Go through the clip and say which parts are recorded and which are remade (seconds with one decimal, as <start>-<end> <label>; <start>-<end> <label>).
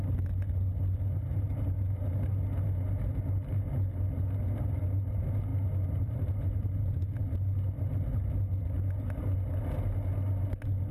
0.0-10.9 recorded